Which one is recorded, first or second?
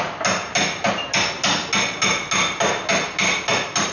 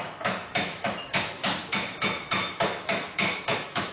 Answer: first